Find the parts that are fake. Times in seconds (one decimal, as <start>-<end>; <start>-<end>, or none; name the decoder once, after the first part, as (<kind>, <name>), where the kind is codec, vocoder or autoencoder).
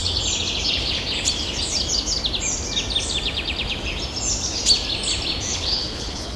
5.5-6.4 (codec, HILCodec)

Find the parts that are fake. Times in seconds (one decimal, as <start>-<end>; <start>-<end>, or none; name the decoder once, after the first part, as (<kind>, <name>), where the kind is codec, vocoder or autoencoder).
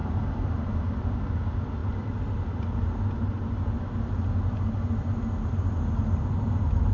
none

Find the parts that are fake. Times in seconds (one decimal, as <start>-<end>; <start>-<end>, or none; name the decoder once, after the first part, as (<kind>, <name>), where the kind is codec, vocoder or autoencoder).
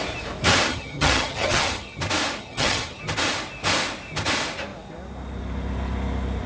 0.7-2.0 (vocoder, HiFi-GAN); 2.4-3.0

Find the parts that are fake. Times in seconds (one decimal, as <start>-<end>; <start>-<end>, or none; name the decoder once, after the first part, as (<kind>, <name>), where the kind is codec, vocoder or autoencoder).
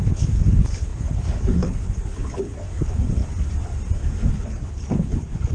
0.0-3.2 (codec, HILCodec); 4.3-5.5